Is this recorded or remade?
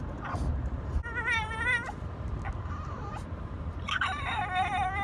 recorded